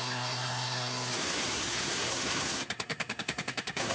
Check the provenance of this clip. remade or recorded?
remade